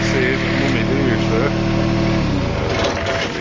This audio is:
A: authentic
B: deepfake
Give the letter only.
A